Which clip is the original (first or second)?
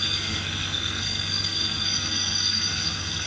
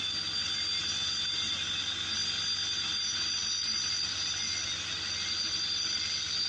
second